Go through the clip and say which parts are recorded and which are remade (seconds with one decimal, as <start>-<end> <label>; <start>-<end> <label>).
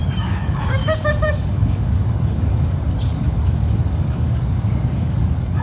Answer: 0.0-0.8 remade; 0.8-1.3 recorded; 1.3-5.6 remade